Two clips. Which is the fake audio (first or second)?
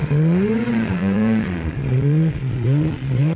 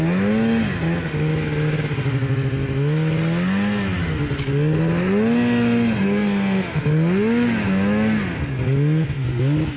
first